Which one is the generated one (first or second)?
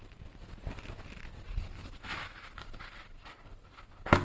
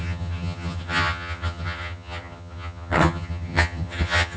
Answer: second